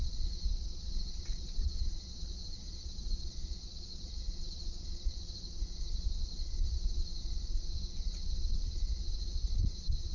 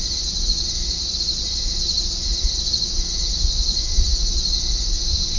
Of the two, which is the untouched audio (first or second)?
second